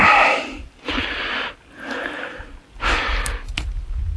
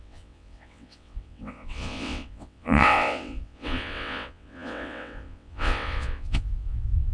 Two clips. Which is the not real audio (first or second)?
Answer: second